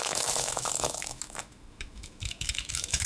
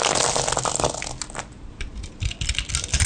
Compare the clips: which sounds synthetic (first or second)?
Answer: first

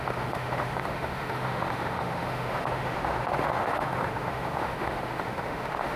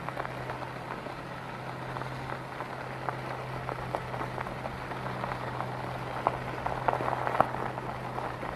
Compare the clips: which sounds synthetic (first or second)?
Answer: first